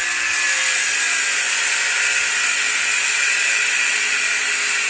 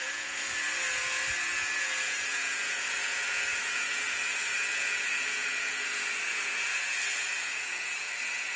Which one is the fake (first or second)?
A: second